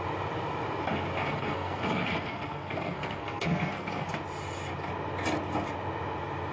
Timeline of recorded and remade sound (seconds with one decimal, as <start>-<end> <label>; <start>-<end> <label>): 0.0-1.2 recorded; 1.2-4.1 remade; 4.1-6.5 recorded